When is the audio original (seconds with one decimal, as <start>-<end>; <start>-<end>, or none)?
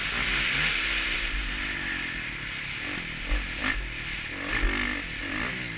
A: 0.0-5.8